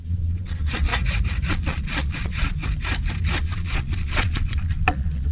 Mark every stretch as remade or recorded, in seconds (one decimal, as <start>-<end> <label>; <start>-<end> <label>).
0.0-0.9 remade; 0.9-1.5 recorded; 1.5-2.6 remade; 2.6-3.4 recorded; 3.4-5.3 remade